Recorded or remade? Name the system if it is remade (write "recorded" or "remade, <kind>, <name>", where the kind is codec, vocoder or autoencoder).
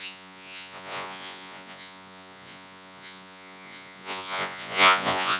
remade, vocoder, Vocos